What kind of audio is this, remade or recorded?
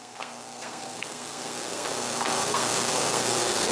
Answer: remade